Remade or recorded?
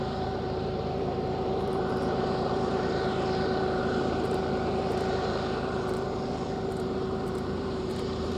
remade